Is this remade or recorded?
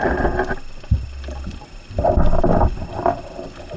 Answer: recorded